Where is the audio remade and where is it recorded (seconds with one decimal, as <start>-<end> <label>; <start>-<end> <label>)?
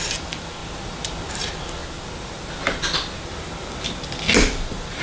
0.0-0.6 remade; 0.6-1.3 recorded; 1.3-1.8 remade; 1.8-4.4 recorded; 4.4-5.0 remade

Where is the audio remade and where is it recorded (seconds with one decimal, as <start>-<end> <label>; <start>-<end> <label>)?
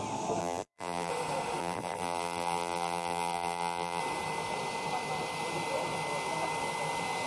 0.0-0.4 recorded; 0.4-1.1 remade; 1.1-1.6 recorded; 1.6-4.0 remade; 4.0-7.3 recorded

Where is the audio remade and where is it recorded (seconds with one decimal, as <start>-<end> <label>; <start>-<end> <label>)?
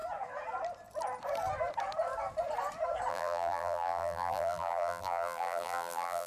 0.0-3.1 recorded; 3.1-6.3 remade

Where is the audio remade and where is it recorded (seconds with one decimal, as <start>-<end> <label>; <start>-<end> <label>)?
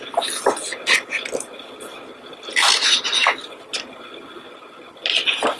0.0-5.6 recorded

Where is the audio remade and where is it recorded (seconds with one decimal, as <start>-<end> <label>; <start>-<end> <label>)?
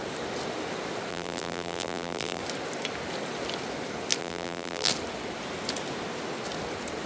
0.0-1.1 recorded; 1.1-2.4 remade; 2.4-4.2 recorded; 4.2-4.9 remade; 4.9-7.1 recorded